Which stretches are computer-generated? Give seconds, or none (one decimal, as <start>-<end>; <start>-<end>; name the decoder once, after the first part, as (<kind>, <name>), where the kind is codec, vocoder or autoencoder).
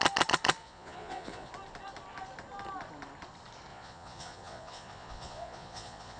0.6-1.5 (vocoder, Vocos); 3.7-6.2